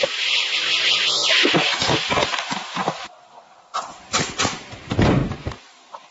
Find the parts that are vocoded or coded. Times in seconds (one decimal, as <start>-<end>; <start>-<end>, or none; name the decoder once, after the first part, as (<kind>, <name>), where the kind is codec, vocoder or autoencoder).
1.2-3.7 (vocoder, BigVGAN v2); 5.2-6.1